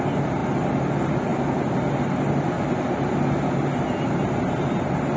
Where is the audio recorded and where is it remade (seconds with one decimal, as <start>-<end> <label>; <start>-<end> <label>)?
0.0-5.2 recorded